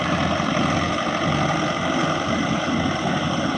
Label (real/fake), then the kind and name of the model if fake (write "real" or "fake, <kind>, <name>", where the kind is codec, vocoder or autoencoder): real